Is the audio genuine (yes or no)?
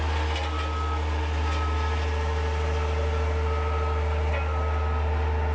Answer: yes